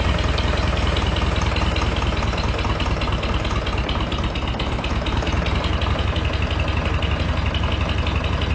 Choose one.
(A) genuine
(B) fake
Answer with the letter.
A